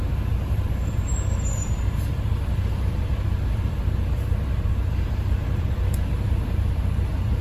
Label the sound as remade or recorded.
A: remade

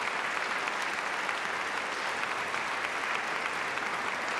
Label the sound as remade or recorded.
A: recorded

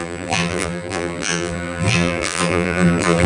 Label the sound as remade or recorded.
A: remade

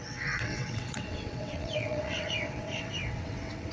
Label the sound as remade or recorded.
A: remade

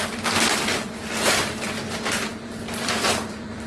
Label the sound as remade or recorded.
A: remade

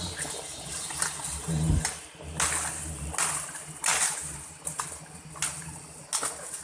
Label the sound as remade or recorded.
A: recorded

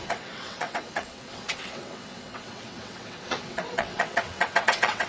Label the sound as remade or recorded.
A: remade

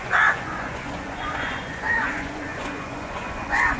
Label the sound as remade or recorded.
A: remade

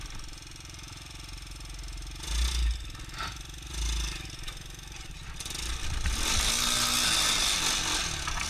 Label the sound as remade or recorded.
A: recorded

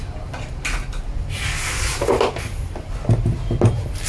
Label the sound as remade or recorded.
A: recorded